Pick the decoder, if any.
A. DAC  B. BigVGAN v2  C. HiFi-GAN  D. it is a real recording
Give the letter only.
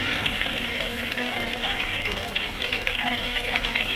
A